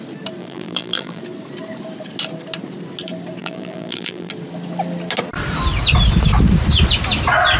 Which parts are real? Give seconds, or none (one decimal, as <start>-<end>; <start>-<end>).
0.0-0.4; 1.2-3.4; 4.3-7.6